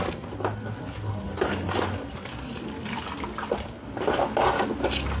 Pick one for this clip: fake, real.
real